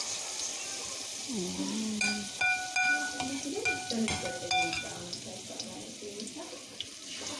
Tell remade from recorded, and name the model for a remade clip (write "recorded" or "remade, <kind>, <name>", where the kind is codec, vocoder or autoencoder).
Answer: recorded